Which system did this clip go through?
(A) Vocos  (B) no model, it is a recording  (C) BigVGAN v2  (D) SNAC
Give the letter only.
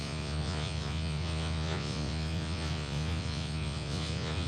A